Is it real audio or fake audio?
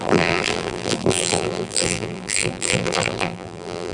fake